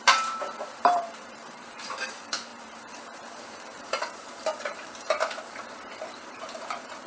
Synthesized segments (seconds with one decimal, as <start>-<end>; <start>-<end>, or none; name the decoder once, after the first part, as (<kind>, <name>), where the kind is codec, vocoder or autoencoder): 0.0-7.1 (vocoder, BigVGAN v2)